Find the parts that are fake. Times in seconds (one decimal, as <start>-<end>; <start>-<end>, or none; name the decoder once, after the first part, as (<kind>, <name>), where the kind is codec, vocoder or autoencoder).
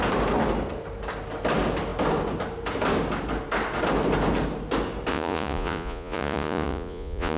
5.1-7.4 (vocoder, Vocos)